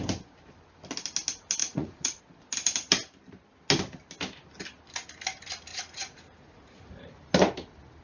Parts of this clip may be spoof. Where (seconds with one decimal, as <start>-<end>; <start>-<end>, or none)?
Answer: 1.6-2.2; 5.7-7.1